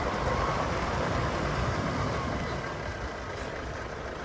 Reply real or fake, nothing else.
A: fake